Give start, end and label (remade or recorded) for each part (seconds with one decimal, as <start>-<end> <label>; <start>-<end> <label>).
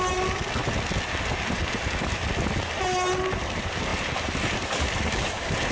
0.0-5.7 recorded